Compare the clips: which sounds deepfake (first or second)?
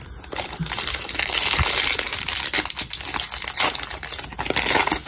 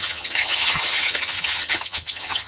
second